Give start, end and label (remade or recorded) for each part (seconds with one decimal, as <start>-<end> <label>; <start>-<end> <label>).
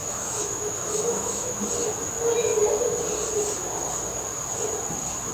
0.0-1.6 remade; 1.6-5.3 recorded